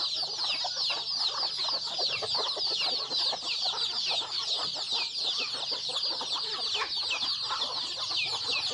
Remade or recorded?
recorded